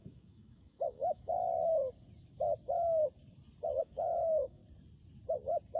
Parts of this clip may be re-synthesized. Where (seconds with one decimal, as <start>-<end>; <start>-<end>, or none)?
0.0-1.3; 3.8-4.6

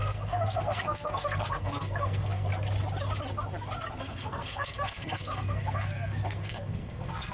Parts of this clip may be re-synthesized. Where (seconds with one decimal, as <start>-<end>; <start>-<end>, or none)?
0.0-2.5; 4.0-7.3

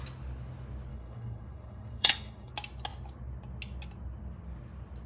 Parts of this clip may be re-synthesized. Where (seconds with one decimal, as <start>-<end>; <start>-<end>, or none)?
0.9-2.5

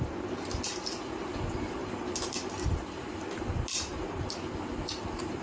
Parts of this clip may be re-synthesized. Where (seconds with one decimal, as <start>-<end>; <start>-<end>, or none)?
none

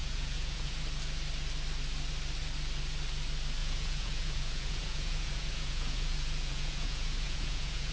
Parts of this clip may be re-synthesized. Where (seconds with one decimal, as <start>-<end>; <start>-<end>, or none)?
0.0-0.8; 3.6-7.9